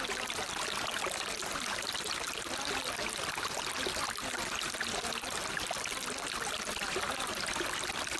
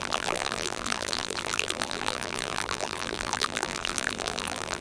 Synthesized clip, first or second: second